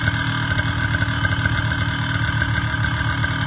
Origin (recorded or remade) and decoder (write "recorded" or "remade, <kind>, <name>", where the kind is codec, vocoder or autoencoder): recorded